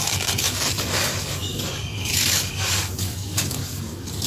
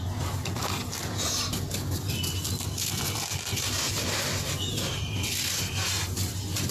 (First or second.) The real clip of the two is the second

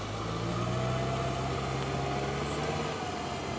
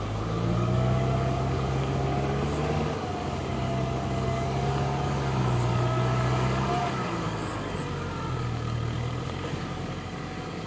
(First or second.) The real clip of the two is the first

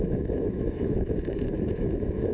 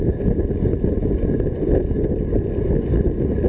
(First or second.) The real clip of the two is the second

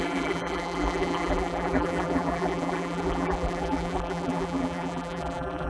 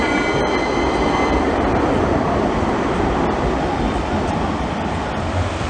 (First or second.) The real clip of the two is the second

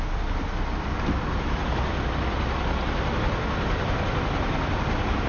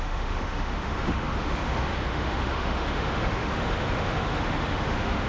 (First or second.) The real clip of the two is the first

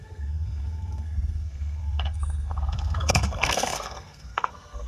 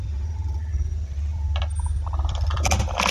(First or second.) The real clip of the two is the second